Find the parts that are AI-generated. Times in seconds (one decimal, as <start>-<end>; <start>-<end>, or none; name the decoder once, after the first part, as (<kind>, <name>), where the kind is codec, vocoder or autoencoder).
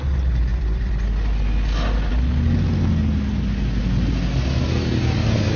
0.5-2.1 (vocoder, BigVGAN v2)